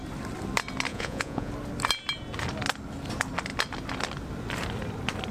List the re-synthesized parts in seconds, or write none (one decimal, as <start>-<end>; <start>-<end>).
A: 0.9-1.5